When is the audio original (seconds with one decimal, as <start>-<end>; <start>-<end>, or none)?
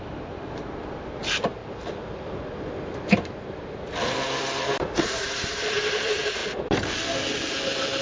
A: 1.6-5.0; 6.4-8.0